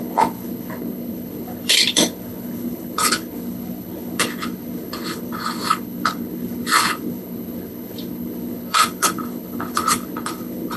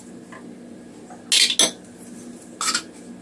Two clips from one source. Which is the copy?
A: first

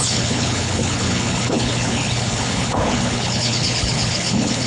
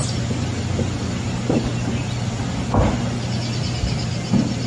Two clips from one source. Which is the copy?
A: first